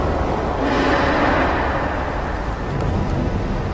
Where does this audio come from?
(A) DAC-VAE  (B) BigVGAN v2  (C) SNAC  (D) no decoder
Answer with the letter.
D